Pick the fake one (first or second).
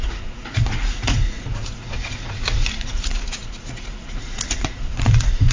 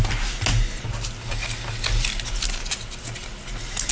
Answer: first